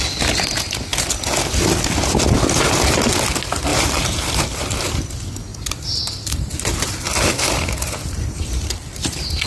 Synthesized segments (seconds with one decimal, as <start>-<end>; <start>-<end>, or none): 3.7-4.4; 5.5-6.5; 8.0-8.7